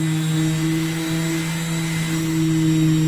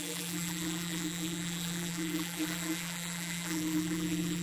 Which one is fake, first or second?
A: second